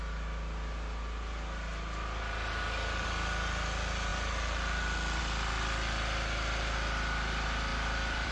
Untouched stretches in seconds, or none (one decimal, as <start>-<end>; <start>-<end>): 0.0-7.7

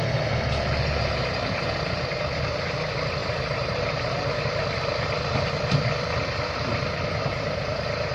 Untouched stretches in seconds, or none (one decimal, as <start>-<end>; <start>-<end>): 0.0-3.2; 4.3-8.1

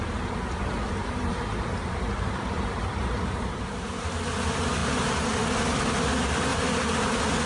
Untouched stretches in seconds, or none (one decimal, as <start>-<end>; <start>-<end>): 0.0-1.0; 4.1-7.5

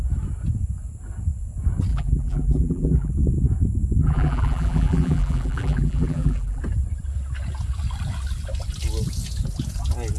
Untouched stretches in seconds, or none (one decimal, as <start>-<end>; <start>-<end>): 0.0-1.9; 3.1-4.0; 6.6-10.2

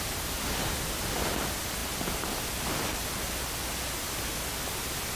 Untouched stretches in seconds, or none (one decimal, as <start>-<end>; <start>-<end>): 0.0-5.2